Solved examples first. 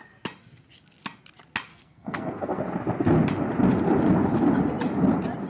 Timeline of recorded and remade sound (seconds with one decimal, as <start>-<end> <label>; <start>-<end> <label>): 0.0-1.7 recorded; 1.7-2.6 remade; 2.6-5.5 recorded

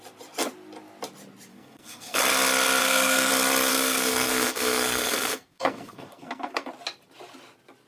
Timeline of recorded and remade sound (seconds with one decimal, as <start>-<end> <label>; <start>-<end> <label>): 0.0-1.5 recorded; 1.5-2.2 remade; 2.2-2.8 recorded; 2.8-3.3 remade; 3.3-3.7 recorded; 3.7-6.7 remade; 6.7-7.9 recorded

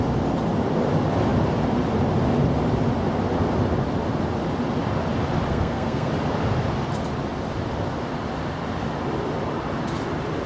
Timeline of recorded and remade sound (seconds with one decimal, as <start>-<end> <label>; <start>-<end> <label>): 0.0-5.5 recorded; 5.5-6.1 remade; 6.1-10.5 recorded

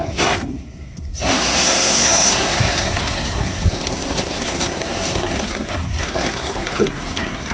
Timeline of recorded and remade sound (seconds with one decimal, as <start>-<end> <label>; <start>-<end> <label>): 0.0-7.5 remade

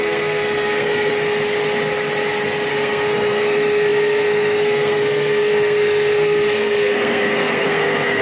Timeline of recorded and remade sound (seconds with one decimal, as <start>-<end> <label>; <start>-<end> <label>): 0.0-1.1 remade; 1.1-2.7 recorded; 2.7-8.2 remade

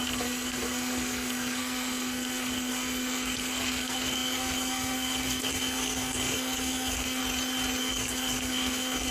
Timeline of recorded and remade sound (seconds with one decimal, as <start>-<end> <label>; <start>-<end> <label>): 0.0-7.2 remade; 7.2-7.8 recorded; 7.8-9.1 remade